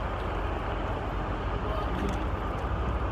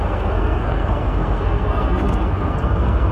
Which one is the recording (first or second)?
first